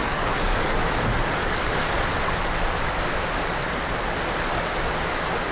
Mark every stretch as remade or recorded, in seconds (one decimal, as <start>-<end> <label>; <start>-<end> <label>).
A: 0.0-0.7 remade; 0.7-1.4 recorded; 1.4-1.9 remade; 1.9-5.5 recorded